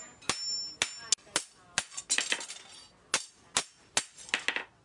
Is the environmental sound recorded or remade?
recorded